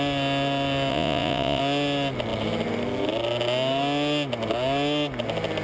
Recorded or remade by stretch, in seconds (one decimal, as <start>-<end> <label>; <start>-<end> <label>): 0.0-0.9 recorded; 0.9-1.6 remade; 1.6-5.6 recorded